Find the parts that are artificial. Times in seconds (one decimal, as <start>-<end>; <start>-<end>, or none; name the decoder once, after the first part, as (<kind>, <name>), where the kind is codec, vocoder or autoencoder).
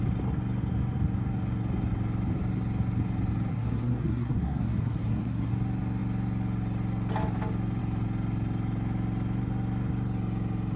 3.5-5.5 (codec, SNAC)